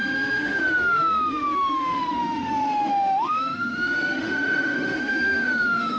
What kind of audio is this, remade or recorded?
remade